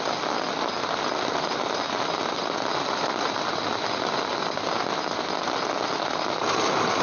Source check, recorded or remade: recorded